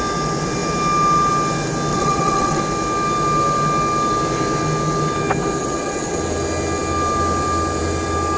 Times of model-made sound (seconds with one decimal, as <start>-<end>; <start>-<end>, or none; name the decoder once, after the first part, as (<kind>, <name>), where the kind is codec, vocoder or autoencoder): 1.9-2.6 (vocoder, WaveNeXt); 5.6-6.2

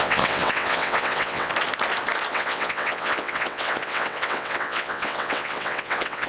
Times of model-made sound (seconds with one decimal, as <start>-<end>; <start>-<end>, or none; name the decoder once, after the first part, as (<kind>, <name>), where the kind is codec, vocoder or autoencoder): 0.0-1.5 (vocoder, WaveNeXt); 2.3-6.3

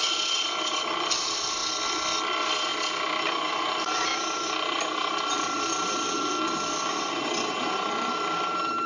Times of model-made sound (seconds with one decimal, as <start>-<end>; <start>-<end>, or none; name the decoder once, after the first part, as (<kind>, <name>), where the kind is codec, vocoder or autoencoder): none